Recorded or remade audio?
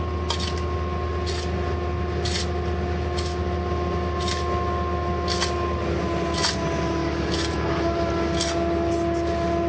recorded